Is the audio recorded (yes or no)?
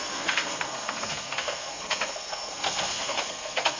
no